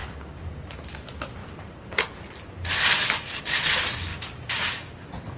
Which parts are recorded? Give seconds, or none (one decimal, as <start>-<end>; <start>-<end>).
0.5-1.4; 3.4-4.1; 4.7-5.4